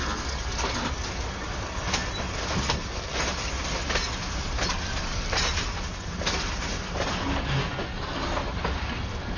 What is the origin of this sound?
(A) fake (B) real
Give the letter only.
B